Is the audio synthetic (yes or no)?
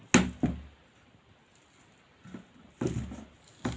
no